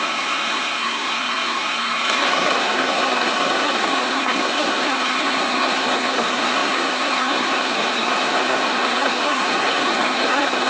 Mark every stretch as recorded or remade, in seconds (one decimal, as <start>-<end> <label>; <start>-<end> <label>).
0.0-10.7 remade